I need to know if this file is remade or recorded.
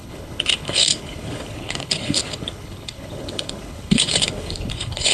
remade